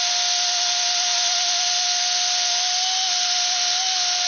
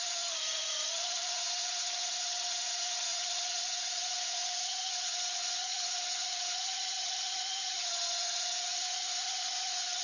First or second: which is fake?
second